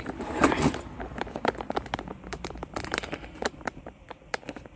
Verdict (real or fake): fake